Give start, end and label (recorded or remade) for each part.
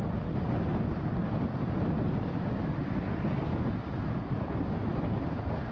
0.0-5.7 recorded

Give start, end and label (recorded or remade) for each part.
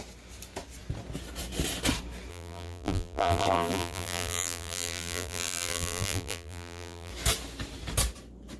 0.0-2.3 recorded; 2.3-7.1 remade; 7.1-8.6 recorded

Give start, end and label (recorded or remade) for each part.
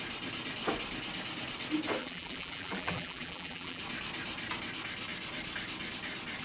0.0-2.0 recorded; 2.0-3.8 remade; 3.8-6.4 recorded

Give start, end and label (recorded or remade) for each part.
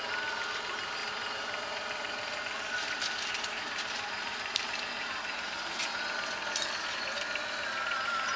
0.0-1.0 recorded; 1.0-6.0 remade; 6.0-8.4 recorded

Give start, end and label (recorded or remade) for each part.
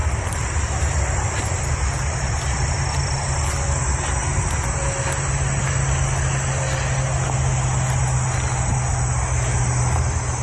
0.0-10.4 recorded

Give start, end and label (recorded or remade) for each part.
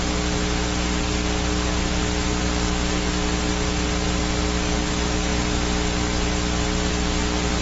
0.0-7.6 recorded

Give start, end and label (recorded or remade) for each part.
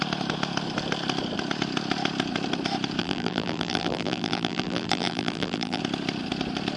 0.0-3.0 recorded; 3.0-5.8 remade; 5.8-6.8 recorded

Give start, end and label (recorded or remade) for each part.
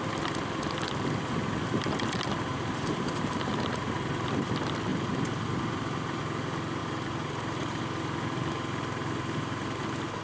0.0-2.5 recorded; 2.5-3.5 remade; 3.5-4.9 recorded; 4.9-6.2 remade; 6.2-6.8 recorded; 6.8-7.8 remade; 7.8-10.2 recorded